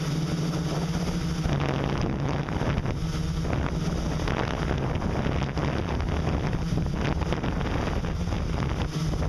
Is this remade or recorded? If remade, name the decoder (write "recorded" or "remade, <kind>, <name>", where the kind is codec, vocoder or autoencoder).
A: recorded